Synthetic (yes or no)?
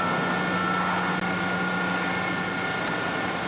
no